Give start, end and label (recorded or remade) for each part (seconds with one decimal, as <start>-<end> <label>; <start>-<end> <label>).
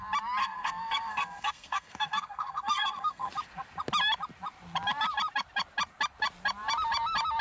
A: 0.0-0.4 recorded; 0.4-3.3 remade; 3.3-7.4 recorded